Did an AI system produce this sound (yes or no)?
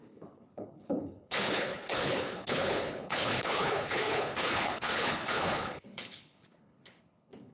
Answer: yes